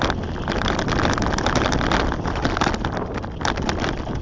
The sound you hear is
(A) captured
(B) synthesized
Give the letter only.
A